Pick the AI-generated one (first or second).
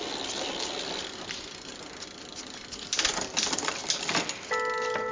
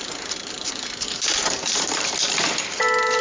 second